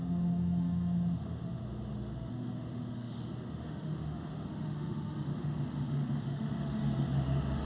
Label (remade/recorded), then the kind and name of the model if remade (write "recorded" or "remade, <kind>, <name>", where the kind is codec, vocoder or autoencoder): remade, autoencoder, DAC-VAE